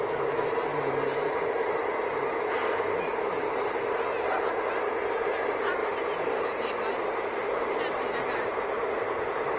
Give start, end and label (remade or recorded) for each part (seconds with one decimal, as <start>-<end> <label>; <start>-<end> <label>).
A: 0.0-5.8 recorded; 5.8-6.7 remade; 6.7-9.6 recorded